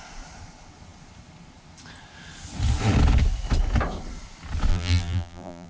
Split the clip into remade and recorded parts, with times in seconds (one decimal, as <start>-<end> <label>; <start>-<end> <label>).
0.0-4.7 recorded; 4.7-5.7 remade